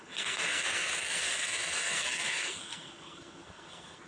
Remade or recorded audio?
remade